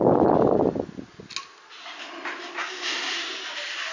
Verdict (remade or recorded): recorded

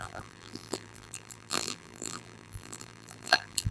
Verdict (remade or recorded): remade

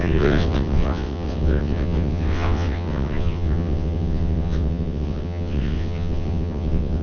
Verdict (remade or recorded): remade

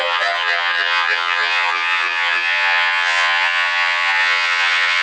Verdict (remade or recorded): remade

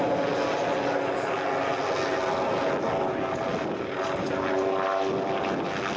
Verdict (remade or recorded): recorded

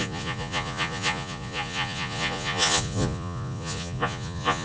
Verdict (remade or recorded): remade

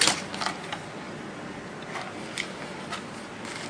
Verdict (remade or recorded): recorded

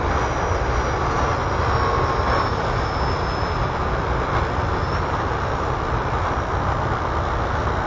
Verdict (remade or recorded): recorded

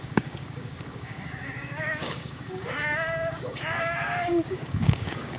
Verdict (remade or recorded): remade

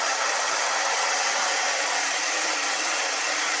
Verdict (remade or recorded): remade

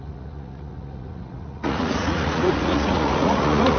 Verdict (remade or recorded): remade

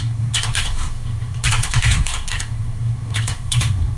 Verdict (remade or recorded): remade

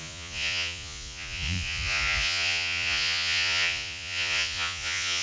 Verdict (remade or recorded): remade